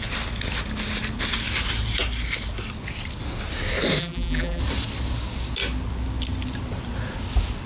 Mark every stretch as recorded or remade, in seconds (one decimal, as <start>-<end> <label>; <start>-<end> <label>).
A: 0.0-4.0 recorded; 4.0-4.6 remade; 4.6-7.7 recorded